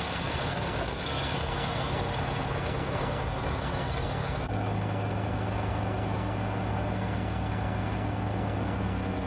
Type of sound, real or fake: fake